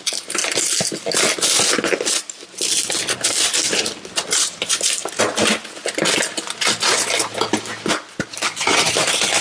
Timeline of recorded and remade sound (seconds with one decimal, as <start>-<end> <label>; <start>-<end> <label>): 0.0-0.4 remade; 0.4-4.3 recorded; 4.3-5.0 remade; 5.0-9.0 recorded; 9.0-9.4 remade